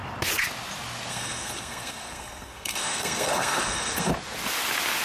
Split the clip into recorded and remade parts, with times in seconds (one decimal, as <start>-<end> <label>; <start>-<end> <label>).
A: 0.0-1.1 recorded; 1.1-4.1 remade; 4.1-5.0 recorded